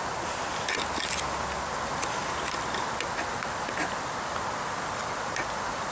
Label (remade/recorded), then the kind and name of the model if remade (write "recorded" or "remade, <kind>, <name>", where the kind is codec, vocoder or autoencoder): recorded